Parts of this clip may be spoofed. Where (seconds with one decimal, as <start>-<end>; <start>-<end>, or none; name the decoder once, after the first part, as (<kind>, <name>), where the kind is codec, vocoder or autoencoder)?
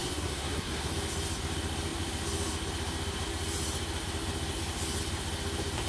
0.0-0.9 (codec, SNAC)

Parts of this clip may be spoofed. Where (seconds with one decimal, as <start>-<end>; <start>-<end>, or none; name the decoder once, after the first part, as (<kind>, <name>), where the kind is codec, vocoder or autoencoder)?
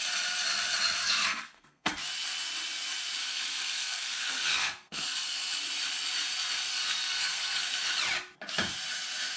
1.0-1.9 (codec, SNAC); 3.2-5.6; 6.7-7.6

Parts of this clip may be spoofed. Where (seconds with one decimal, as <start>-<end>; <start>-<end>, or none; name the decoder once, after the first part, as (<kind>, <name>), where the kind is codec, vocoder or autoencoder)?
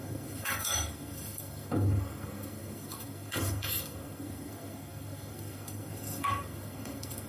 0.0-7.3 (codec, SNAC)